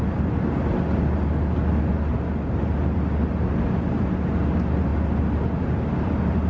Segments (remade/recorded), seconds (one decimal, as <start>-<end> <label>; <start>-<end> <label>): 0.0-6.5 recorded